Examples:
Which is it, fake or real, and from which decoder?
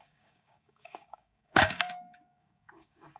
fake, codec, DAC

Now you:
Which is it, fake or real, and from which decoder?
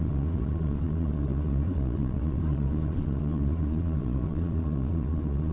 fake, vocoder, Vocos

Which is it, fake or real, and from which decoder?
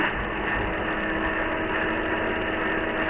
real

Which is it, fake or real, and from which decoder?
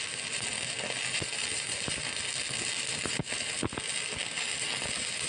real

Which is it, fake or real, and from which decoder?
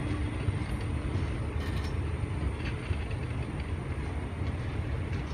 real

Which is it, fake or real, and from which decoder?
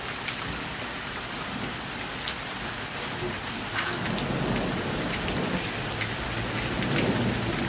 real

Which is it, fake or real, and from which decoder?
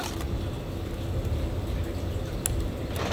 real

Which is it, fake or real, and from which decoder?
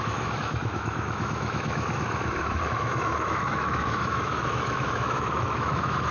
fake, autoencoder, DAC-VAE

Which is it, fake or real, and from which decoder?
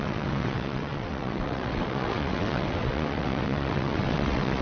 fake, vocoder, WaveNeXt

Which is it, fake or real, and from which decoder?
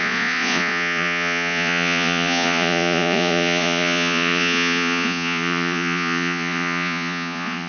fake, vocoder, Vocos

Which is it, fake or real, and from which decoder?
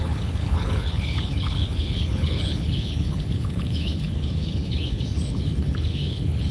fake, codec, HILCodec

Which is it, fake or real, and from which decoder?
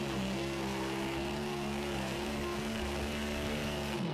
fake, codec, SNAC